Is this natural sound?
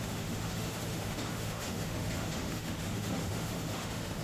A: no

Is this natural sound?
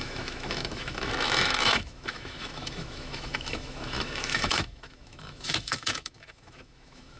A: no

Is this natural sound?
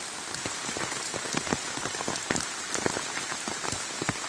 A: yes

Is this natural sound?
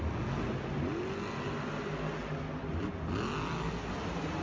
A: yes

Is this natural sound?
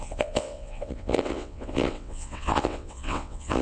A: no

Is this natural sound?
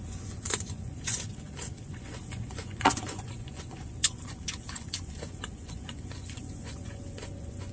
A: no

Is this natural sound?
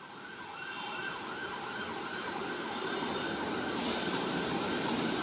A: no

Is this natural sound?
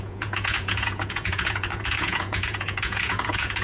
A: no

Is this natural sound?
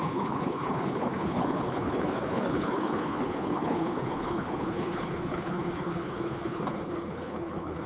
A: no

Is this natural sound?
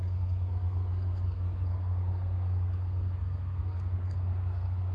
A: no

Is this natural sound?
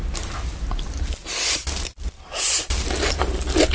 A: yes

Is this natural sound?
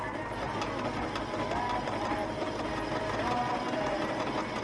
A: yes